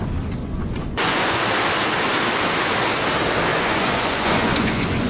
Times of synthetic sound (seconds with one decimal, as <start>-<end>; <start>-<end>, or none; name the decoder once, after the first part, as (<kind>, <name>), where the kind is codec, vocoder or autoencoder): 0.4-1.4 (vocoder, Vocos); 3.5-5.1